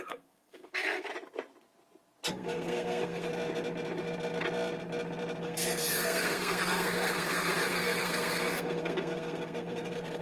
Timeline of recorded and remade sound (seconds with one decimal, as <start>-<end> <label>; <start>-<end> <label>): 0.0-1.1 remade; 1.1-2.3 recorded; 2.3-3.3 remade; 3.3-5.4 recorded; 5.4-10.2 remade